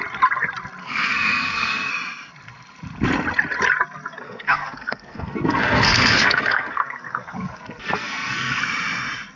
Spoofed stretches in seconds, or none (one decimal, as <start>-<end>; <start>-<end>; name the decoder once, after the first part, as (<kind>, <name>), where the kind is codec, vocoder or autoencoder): 0.8-1.9 (codec, SNAC); 4.1-8.6